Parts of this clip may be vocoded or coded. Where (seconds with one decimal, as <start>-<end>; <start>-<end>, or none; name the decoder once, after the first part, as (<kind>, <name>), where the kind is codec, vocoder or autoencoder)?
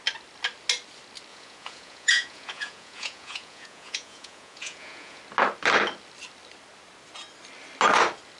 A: 1.3-5.2 (vocoder, Vocos)